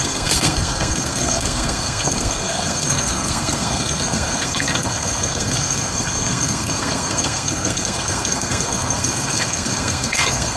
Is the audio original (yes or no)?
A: no